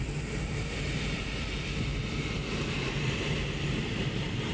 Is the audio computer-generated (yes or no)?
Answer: yes